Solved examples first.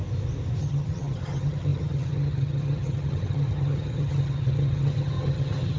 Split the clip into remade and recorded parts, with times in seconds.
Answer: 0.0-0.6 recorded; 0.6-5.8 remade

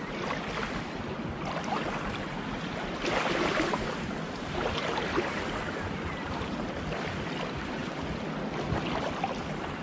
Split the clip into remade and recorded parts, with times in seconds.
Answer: 0.0-9.8 recorded

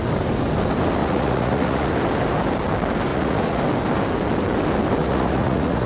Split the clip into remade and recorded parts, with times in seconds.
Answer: 0.0-1.0 recorded; 1.0-1.9 remade; 1.9-3.1 recorded; 3.1-3.6 remade; 3.6-5.0 recorded; 5.0-5.9 remade

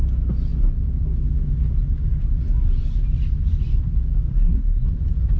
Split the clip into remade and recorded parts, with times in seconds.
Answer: 0.0-4.3 recorded; 4.3-4.9 remade; 4.9-5.4 recorded

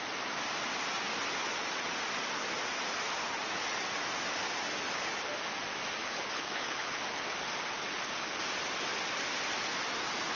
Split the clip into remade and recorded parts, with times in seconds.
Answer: 0.0-6.0 recorded; 6.0-7.0 remade; 7.0-10.4 recorded